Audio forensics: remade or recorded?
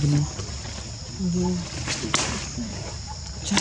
recorded